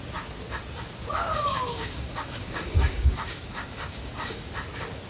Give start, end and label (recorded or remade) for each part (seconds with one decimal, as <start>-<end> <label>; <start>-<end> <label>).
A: 0.0-1.4 recorded; 1.4-4.5 remade; 4.5-5.1 recorded